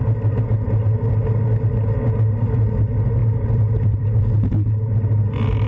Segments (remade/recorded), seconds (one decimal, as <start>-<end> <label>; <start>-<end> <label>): 0.0-3.2 recorded; 3.2-4.2 remade; 4.2-5.7 recorded